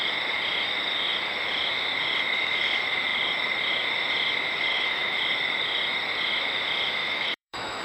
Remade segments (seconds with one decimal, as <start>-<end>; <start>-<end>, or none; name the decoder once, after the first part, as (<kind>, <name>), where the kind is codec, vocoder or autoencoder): 4.7-5.2 (autoencoder, DAC-VAE); 7.0-7.8